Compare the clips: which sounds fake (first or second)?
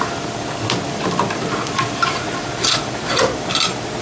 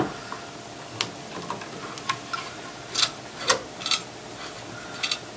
first